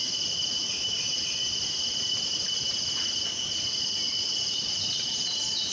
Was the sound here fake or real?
real